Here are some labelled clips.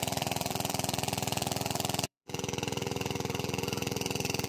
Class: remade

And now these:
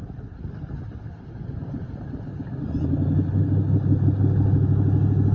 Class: recorded